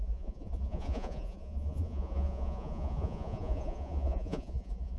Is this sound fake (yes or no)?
yes